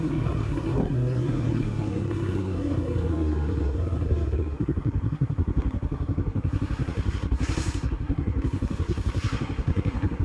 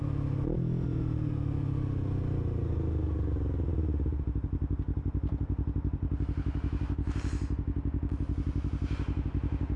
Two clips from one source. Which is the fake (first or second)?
first